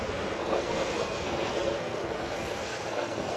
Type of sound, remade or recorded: remade